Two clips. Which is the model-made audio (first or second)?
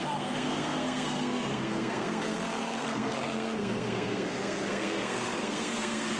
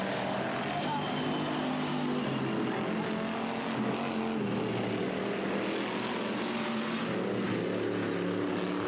first